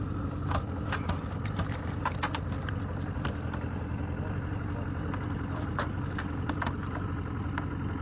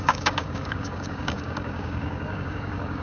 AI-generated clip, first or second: second